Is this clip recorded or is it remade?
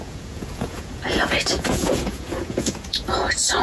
remade